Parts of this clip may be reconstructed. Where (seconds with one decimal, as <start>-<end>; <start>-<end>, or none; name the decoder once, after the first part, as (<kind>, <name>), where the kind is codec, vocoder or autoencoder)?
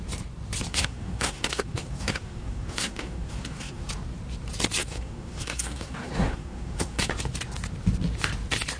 0.7-3.9 (codec, SNAC); 4.8-7.1